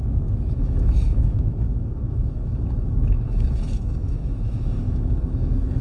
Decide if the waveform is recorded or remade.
remade